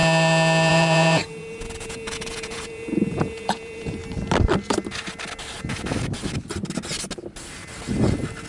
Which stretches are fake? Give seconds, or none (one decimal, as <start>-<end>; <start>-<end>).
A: 0.7-4.0